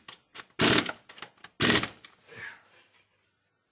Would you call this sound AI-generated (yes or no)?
no